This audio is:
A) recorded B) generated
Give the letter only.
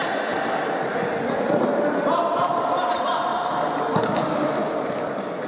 A